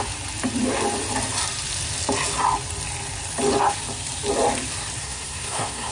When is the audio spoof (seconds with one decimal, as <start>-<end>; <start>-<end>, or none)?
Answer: 5.0-5.9